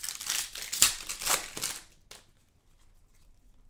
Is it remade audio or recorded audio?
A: recorded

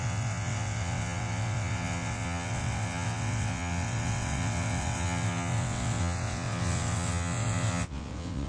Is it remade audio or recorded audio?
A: remade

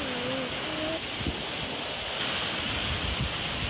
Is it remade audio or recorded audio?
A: recorded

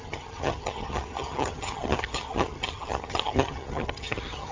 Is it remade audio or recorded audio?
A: remade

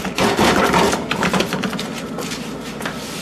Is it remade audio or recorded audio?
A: recorded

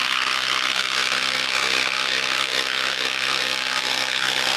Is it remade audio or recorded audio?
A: remade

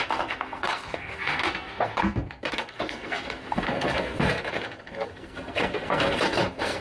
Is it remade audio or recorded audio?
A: remade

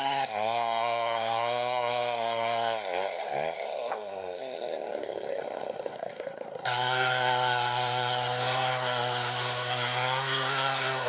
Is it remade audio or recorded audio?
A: remade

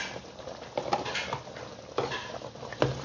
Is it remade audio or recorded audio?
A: recorded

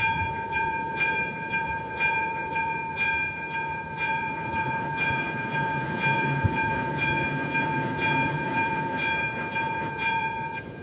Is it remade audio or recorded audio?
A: remade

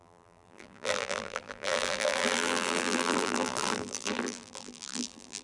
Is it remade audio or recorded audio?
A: remade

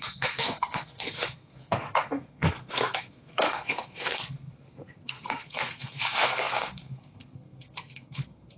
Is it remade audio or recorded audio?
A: remade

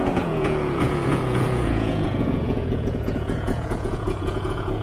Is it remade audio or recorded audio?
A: remade